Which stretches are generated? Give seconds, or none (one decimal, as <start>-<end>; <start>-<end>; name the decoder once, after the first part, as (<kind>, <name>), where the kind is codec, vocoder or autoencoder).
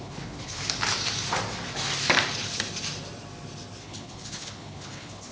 0.0-0.6 (codec, HILCodec); 3.8-5.3